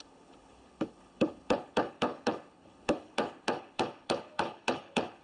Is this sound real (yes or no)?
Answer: no